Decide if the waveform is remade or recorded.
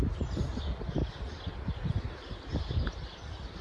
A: recorded